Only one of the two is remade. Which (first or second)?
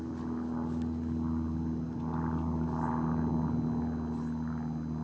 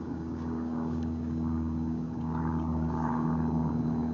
second